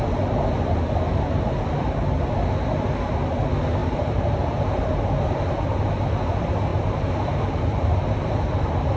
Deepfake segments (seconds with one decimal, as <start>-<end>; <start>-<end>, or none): 1.3-2.0; 3.8-5.0; 6.7-8.5